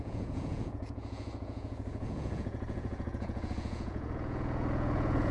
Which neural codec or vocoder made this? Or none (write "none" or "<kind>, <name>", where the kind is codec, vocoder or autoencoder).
vocoder, Vocos